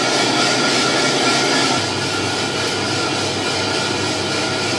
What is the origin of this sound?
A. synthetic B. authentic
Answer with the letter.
B